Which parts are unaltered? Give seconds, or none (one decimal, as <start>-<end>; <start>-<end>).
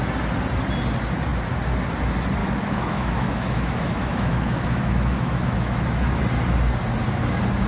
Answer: 0.0-2.4; 6.2-7.7